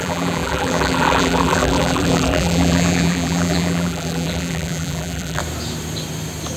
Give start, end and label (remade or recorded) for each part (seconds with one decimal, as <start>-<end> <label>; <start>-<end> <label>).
0.0-5.4 remade; 5.4-6.6 recorded